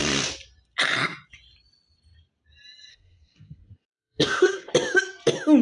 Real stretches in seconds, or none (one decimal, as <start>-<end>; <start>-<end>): 0.0-2.9; 4.7-5.6